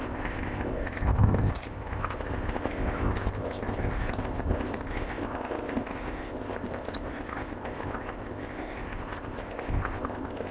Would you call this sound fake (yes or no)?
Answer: yes